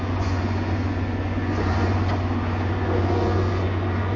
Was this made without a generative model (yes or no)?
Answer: no